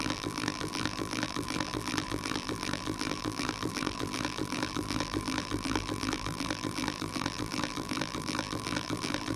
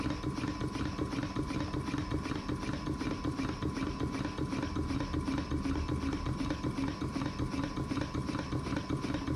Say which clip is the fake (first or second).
first